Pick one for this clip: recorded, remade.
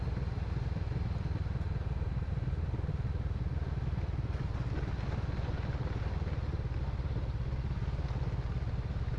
recorded